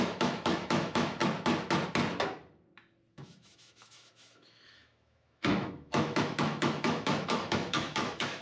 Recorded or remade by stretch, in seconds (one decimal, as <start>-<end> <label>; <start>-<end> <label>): 0.0-1.2 remade; 1.2-3.1 recorded; 3.1-8.4 remade